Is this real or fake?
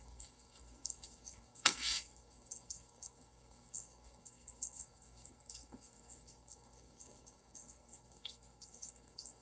fake